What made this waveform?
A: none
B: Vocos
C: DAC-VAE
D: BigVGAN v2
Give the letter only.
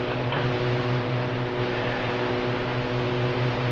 A